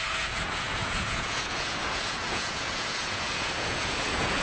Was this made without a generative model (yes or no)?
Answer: no